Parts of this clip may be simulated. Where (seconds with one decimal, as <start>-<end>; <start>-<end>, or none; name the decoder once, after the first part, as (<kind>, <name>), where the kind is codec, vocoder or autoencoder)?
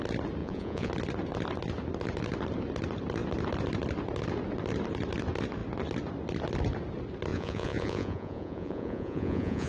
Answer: 0.4-0.9 (vocoder, Vocos); 7.3-9.7